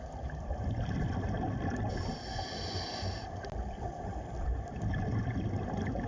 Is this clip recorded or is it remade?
recorded